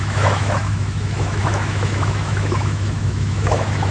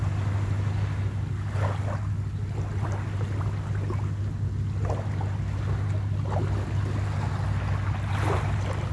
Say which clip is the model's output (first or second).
first